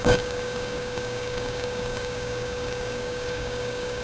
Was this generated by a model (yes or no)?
yes